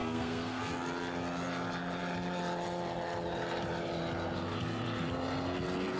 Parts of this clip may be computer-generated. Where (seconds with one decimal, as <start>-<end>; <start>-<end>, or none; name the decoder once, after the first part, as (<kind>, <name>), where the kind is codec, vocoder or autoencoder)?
0.0-0.6 (codec, SNAC)